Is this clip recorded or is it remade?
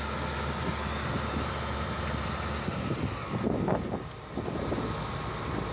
recorded